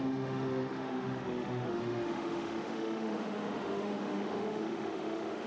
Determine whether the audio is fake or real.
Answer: fake